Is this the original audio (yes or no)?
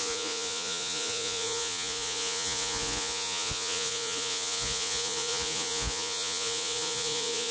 no